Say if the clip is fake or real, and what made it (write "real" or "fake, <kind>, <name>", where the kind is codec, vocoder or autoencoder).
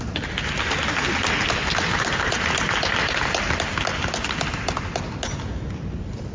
real